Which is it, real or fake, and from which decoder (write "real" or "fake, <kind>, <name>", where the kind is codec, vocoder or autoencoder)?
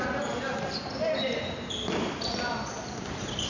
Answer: real